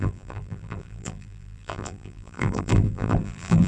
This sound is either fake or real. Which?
fake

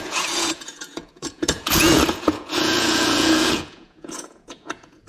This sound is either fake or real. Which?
fake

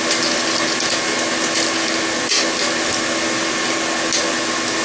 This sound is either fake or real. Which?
real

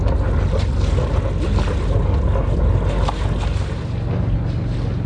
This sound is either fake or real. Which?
real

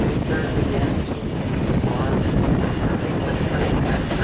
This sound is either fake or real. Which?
real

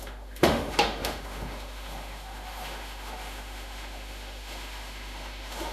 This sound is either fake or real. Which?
fake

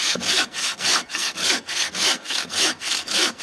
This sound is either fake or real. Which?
fake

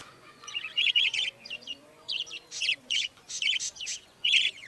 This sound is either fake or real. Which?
fake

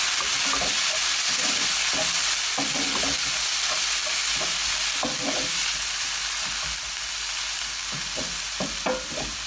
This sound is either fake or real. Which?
real